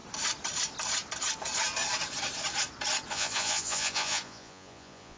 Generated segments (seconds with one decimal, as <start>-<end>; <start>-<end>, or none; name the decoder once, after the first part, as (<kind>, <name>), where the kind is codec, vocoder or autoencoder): 3.1-5.2 (vocoder, Vocos)